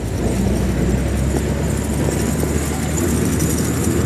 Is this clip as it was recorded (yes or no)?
yes